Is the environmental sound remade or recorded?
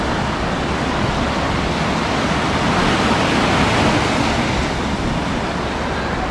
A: recorded